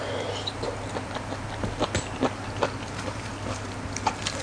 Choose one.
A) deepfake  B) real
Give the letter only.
B